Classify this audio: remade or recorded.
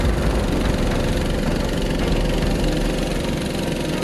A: recorded